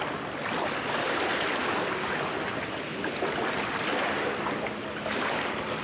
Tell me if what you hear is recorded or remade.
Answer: recorded